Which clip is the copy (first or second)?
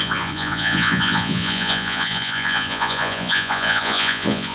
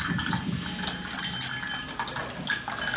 first